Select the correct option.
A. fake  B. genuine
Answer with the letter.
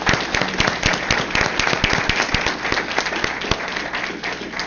B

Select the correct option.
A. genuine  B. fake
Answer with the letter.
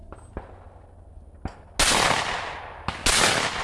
A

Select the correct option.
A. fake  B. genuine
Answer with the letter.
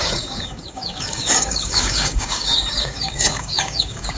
A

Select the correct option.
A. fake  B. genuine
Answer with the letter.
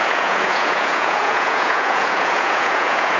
A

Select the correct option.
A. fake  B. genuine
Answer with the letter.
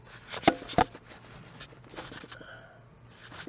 B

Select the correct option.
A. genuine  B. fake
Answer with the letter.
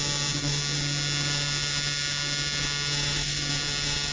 A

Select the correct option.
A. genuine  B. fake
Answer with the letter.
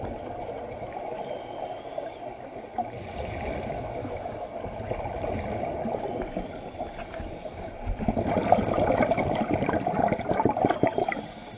A